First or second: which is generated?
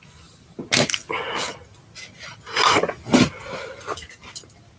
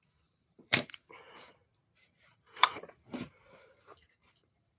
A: second